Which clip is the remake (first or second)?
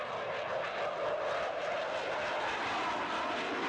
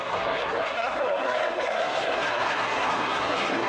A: second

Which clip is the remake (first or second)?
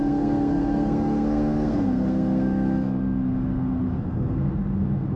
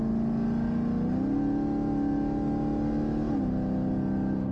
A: first